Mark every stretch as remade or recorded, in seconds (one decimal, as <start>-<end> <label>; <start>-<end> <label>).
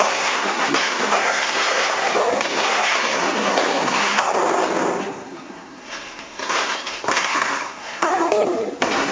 0.0-4.4 remade; 4.4-5.0 recorded; 5.0-9.1 remade